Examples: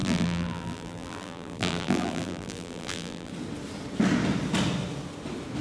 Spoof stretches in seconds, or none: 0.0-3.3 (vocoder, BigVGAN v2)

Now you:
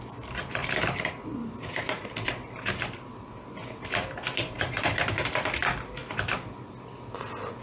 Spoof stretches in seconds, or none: 0.6-5.2 (vocoder, BigVGAN v2)

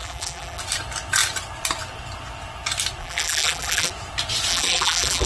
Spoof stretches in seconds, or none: 0.0-0.6 (vocoder, BigVGAN v2); 3.0-3.9; 4.5-5.3

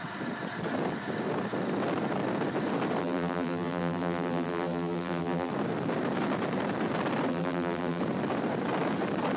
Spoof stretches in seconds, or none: 3.0-5.5 (vocoder, BigVGAN v2); 7.3-8.0

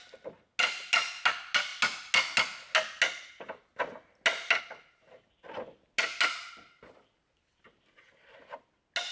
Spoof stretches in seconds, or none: none

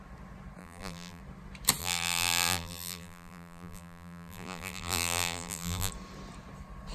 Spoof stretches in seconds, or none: 0.6-1.2 (vocoder, BigVGAN v2); 1.8-5.9